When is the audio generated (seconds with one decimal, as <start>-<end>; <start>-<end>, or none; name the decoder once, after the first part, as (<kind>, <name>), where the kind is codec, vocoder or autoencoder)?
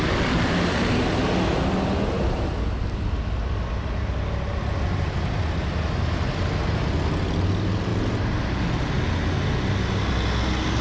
none